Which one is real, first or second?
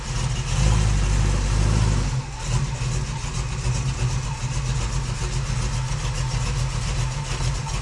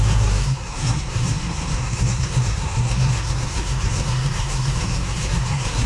first